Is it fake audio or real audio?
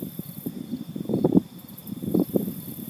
fake